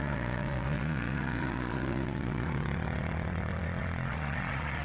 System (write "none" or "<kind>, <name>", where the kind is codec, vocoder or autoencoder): vocoder, Vocos